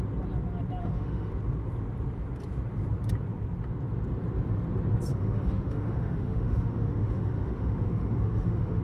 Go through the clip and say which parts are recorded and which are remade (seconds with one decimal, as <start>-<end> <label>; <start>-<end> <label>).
0.0-0.8 recorded; 0.8-1.3 remade; 1.3-5.1 recorded; 5.1-8.8 remade